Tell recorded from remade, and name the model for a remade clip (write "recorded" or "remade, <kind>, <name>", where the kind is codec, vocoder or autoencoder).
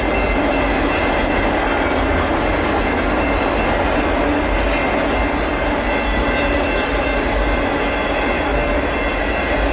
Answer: recorded